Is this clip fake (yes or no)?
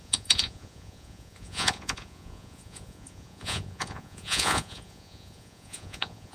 yes